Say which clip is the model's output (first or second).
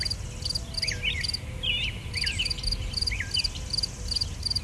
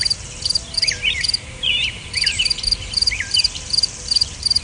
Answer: second